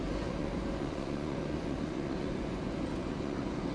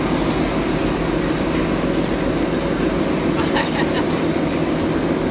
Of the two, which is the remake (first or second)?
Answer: first